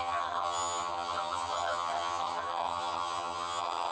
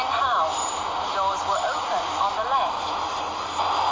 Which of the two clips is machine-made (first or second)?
first